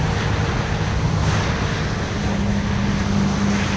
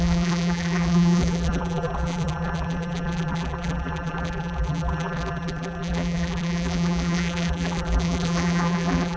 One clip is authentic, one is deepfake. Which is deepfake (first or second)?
second